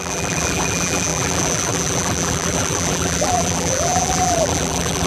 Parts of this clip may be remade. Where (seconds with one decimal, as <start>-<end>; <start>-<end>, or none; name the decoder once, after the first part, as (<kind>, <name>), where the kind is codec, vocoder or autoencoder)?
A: 0.0-5.1 (vocoder, BigVGAN v2)